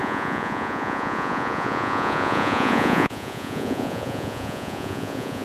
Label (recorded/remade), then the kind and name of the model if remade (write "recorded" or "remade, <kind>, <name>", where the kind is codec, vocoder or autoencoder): remade, vocoder, Vocos